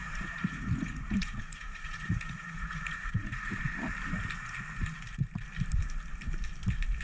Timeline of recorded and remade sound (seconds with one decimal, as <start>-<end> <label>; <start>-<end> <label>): 0.0-3.6 remade; 3.6-7.0 recorded

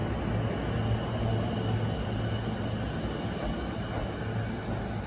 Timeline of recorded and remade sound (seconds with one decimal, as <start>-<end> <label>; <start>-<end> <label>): 0.0-5.1 recorded